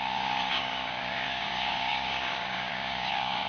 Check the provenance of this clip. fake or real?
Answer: fake